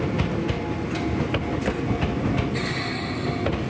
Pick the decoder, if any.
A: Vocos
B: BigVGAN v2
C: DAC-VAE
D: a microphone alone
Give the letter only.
D